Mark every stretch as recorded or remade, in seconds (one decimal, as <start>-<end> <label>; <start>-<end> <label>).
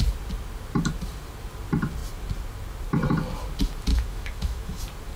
0.0-3.9 recorded; 3.9-4.8 remade; 4.8-5.2 recorded